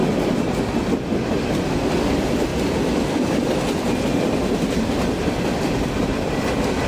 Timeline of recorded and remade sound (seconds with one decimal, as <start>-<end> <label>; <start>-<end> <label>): 0.0-2.5 recorded; 2.5-6.9 remade